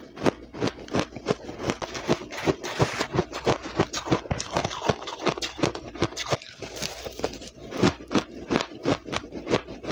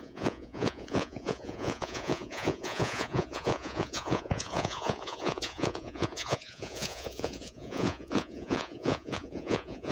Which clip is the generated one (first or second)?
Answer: second